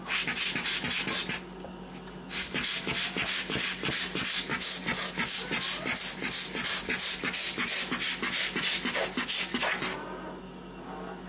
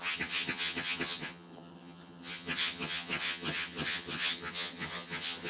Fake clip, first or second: second